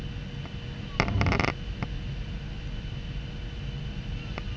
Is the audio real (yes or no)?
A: yes